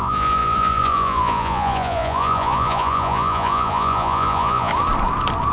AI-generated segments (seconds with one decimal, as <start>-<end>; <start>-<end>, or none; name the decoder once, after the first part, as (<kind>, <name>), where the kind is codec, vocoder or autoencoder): 0.0-4.7 (vocoder, Vocos)